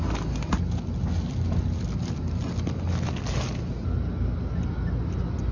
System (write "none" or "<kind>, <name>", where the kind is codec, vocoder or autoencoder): none